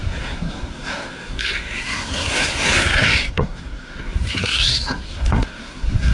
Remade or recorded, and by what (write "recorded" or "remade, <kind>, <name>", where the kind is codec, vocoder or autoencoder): remade, codec, SNAC